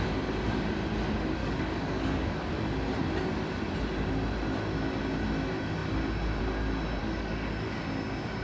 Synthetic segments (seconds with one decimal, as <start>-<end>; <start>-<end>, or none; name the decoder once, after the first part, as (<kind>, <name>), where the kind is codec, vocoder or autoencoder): 1.4-2.5 (codec, DAC); 7.0-7.8